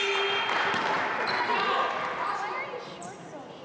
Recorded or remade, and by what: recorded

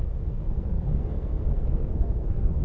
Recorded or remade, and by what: remade, codec, SNAC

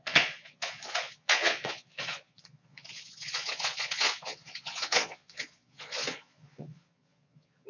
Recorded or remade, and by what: remade, vocoder, Vocos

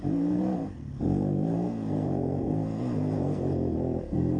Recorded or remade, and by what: remade, codec, SNAC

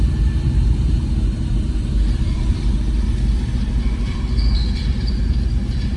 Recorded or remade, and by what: remade, vocoder, BigVGAN v2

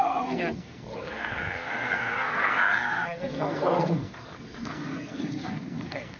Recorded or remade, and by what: remade, codec, SNAC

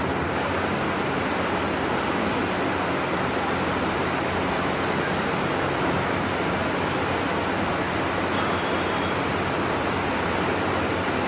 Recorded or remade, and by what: recorded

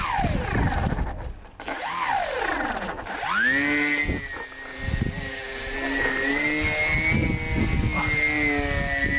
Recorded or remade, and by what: recorded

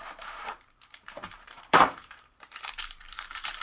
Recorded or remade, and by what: remade, vocoder, BigVGAN v2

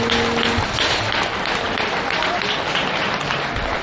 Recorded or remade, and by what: recorded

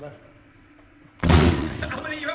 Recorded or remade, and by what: remade, vocoder, WaveNeXt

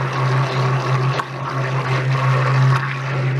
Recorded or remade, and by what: recorded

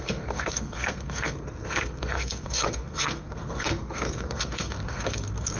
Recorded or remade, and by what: remade, codec, SNAC